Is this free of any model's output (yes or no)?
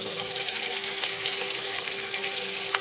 no